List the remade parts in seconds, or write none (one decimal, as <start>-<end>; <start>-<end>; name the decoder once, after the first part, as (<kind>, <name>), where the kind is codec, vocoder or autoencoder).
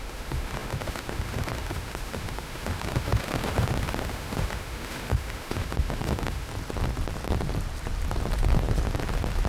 0.0-6.5 (autoencoder, DAC-VAE)